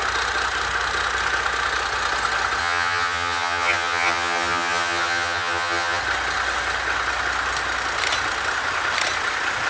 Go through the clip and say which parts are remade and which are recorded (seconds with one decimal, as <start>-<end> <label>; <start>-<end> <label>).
0.0-2.6 recorded; 2.6-6.0 remade; 6.0-9.7 recorded